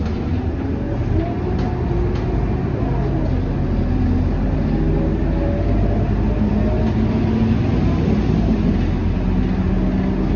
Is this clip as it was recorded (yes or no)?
yes